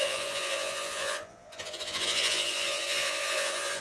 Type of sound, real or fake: fake